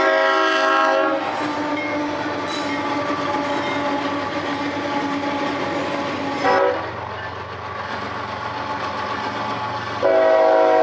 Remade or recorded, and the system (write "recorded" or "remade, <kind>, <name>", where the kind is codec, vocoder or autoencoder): recorded